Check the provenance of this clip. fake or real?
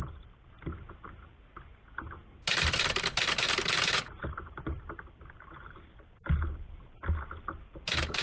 real